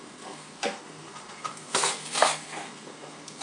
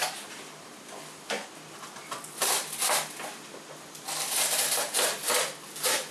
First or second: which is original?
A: second